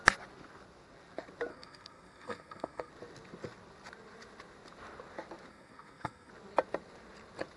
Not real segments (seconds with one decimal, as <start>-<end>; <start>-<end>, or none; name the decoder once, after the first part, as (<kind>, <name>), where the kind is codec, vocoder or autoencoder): 1.5-2.9 (codec, SNAC); 5.5-6.3